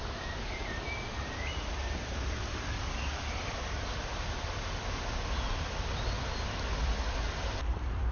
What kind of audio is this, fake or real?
real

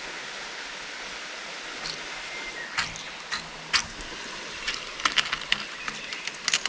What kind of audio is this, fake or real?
real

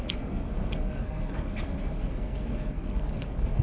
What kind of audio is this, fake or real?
fake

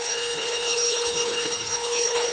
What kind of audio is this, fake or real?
fake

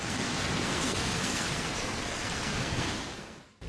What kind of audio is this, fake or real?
fake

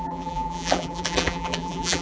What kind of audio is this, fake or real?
fake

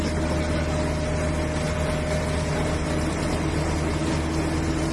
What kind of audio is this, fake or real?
real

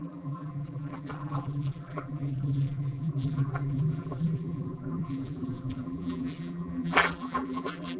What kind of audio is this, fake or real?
fake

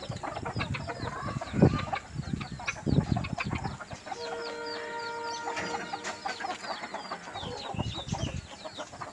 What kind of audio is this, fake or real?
real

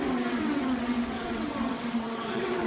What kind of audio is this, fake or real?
fake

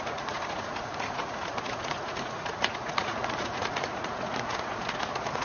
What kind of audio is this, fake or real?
fake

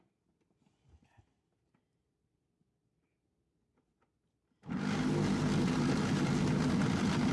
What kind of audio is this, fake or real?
real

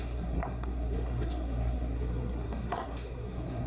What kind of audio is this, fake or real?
fake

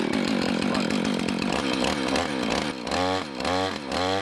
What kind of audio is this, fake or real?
real